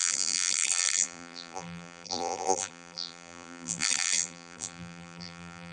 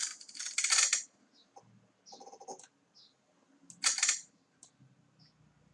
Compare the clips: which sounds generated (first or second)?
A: first